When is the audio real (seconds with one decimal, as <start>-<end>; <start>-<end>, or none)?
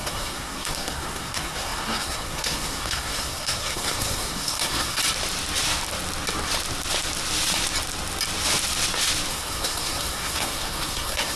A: 5.0-9.3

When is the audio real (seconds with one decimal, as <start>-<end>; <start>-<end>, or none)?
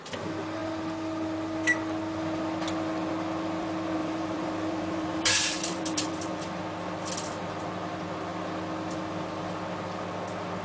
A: 0.0-4.0; 6.6-10.6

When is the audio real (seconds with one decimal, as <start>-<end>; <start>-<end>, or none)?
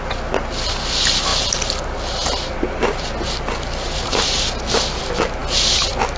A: 0.0-6.2